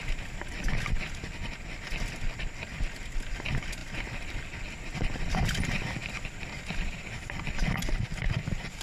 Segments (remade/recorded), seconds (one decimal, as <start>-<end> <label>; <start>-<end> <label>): 0.0-8.8 recorded